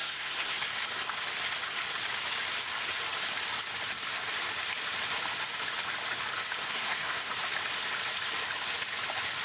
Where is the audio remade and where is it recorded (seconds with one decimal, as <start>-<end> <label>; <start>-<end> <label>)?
0.0-0.6 remade; 0.6-6.6 recorded; 6.6-7.3 remade; 7.3-9.4 recorded